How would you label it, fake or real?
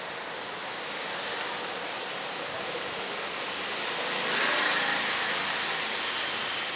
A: real